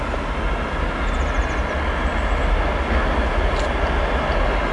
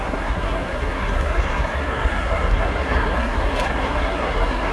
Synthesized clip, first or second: second